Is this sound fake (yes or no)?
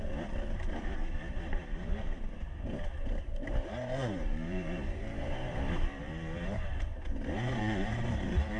yes